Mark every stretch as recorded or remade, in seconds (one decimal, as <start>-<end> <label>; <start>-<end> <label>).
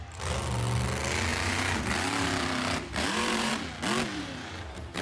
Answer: 0.0-1.3 recorded; 1.3-3.5 remade; 3.5-4.1 recorded; 4.1-5.0 remade